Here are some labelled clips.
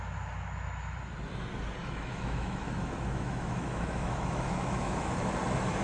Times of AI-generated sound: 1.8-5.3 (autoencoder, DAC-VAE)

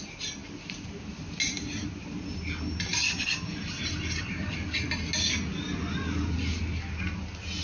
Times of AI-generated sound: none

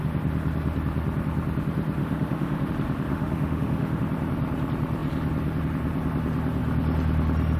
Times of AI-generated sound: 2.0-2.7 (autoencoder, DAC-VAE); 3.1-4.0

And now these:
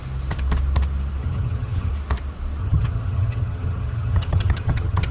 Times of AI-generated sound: 1.2-1.9 (vocoder, HiFi-GAN); 2.6-5.1